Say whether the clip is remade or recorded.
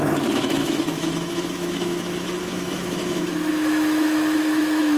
remade